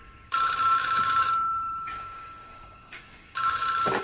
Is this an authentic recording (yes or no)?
no